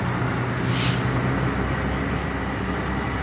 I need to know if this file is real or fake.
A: real